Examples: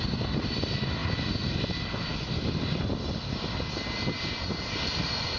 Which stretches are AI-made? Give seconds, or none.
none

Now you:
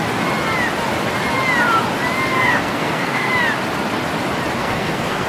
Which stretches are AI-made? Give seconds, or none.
2.3-3.3 (codec, SNAC); 4.6-5.3

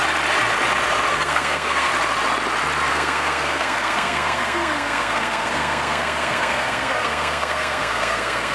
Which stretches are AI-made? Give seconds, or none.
1.1-1.9 (codec, SNAC); 2.9-8.5

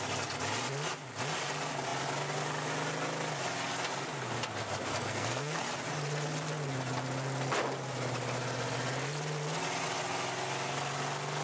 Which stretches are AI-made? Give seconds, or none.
4.9-5.6 (codec, SNAC)

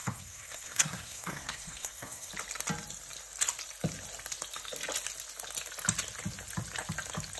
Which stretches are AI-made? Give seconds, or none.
0.0-2.3 (codec, SNAC)

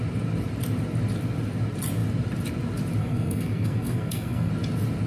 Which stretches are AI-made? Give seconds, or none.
3.0-4.5 (codec, SNAC)